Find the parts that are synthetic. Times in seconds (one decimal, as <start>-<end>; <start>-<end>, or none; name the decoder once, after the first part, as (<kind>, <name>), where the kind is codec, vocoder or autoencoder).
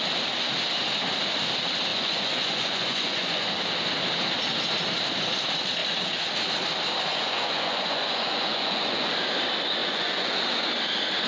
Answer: 1.9-3.5 (vocoder, Vocos); 7.1-9.1; 9.8-10.3